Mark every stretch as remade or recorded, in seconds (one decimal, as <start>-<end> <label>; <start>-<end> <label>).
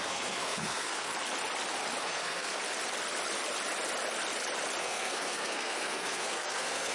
0.0-1.1 remade; 1.1-2.0 recorded; 2.0-2.6 remade; 2.6-4.8 recorded; 4.8-6.9 remade